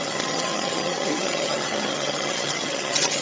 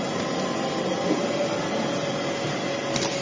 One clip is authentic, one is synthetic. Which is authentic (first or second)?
second